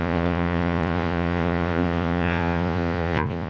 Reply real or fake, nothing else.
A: fake